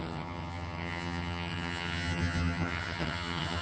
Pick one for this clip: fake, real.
fake